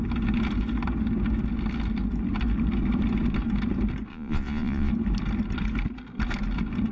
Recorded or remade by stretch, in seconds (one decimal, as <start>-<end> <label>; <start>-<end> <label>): 0.0-4.1 recorded; 4.1-4.9 remade; 4.9-6.9 recorded